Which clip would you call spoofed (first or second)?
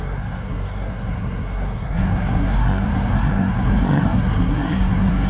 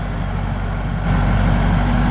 first